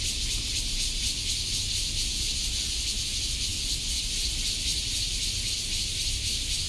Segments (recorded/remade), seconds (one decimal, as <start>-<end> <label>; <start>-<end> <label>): 0.0-4.7 recorded; 4.7-5.4 remade; 5.4-6.7 recorded